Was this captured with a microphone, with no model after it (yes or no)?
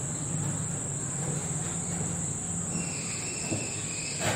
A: yes